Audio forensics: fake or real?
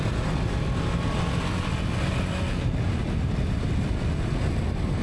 real